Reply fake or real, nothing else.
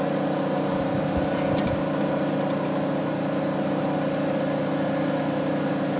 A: real